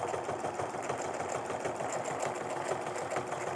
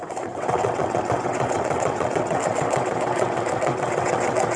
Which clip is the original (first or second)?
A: first